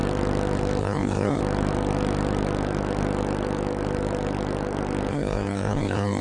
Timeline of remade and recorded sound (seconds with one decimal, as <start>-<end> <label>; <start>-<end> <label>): 0.0-0.8 recorded; 0.8-1.4 remade; 1.4-5.1 recorded; 5.1-6.2 remade